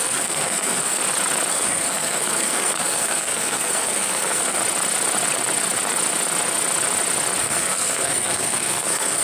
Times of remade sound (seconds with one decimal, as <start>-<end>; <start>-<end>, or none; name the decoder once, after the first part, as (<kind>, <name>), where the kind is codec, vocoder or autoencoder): 0.0-1.0 (codec, SNAC); 1.5-4.6; 7.4-9.2